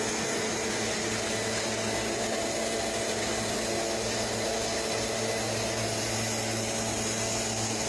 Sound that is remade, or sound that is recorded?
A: recorded